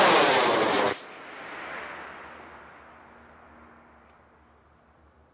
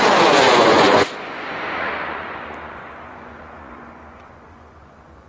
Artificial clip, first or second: second